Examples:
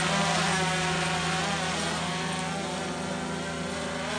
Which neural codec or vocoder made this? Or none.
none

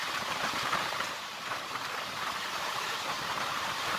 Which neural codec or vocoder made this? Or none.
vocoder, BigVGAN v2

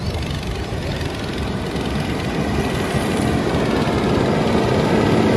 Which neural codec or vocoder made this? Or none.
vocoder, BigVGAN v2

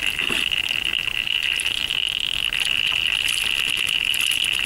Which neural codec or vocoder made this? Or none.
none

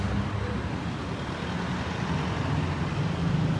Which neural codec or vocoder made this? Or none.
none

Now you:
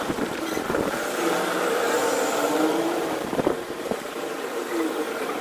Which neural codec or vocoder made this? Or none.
vocoder, BigVGAN v2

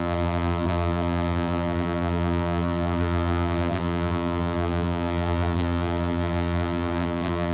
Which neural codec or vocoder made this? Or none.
vocoder, BigVGAN v2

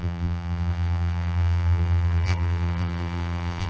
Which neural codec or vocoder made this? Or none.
vocoder, BigVGAN v2